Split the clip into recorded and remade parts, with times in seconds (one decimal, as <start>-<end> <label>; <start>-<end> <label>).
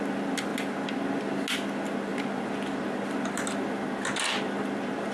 0.0-5.1 recorded